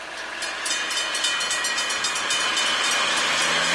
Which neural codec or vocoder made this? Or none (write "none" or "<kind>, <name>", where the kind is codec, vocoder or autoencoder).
none